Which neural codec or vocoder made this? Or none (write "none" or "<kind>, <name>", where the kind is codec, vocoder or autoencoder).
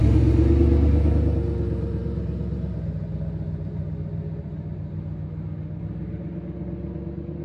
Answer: none